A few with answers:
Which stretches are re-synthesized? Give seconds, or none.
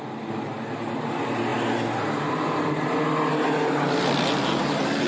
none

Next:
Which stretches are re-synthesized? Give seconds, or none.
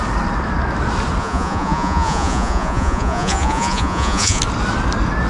1.2-4.4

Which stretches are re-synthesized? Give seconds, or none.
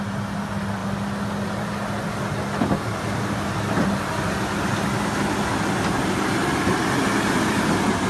none